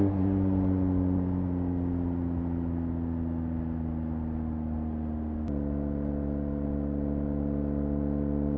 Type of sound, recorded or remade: recorded